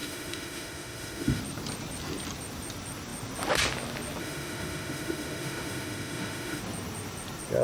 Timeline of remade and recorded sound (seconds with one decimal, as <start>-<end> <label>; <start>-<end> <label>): 0.0-1.4 remade; 1.4-4.2 recorded; 4.2-6.6 remade; 6.6-7.6 recorded